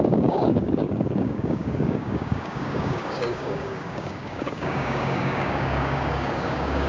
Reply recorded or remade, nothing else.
remade